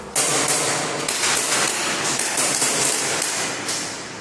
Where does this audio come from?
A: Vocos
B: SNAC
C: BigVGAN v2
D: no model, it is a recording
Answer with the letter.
D